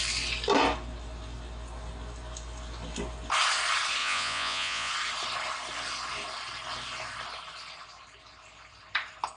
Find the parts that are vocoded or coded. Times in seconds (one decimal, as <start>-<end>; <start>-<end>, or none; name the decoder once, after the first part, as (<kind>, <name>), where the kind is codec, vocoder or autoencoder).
4.0-4.9 (vocoder, Vocos)